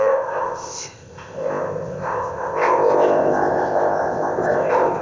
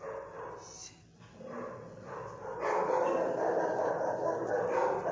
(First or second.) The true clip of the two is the second